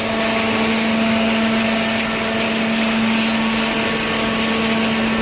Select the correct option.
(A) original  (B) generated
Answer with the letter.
A